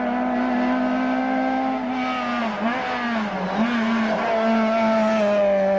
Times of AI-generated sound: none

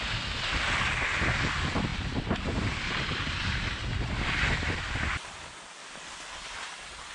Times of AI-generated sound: none

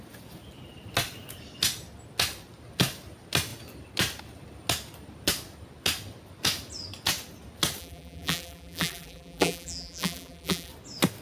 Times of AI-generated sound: 7.8-10.7 (vocoder, BigVGAN v2)

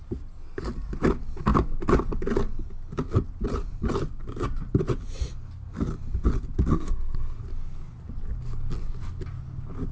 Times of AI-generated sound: 6.7-7.4 (codec, SNAC)

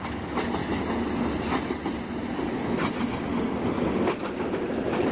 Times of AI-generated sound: none

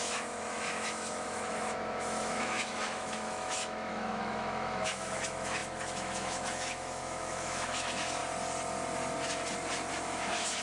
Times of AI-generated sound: 0.0-8.2 (autoencoder, DAC-VAE); 9.9-10.6

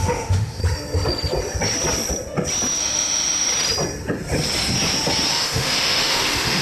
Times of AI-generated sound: 0.0-0.6 (autoencoder, DAC-VAE); 2.8-3.5; 5.3-6.6